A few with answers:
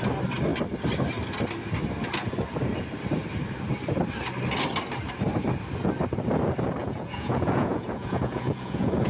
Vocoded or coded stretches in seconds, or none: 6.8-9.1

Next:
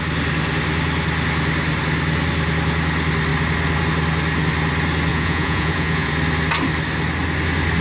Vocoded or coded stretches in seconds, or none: 5.1-6.1

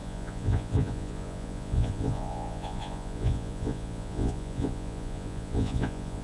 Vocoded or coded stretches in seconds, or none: 0.0-6.2

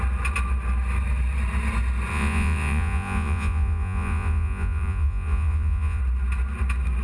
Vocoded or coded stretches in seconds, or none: 2.1-6.0

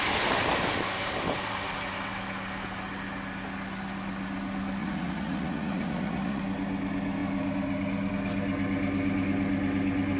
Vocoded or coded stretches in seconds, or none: 4.8-6.4

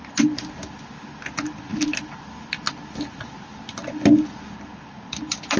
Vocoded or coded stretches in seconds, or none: none